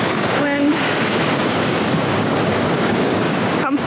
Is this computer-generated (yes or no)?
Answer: yes